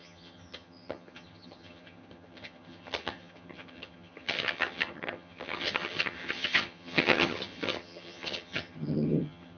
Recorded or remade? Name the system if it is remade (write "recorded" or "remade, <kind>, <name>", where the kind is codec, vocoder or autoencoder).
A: remade, vocoder, HiFi-GAN